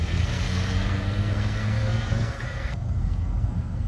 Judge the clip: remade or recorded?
remade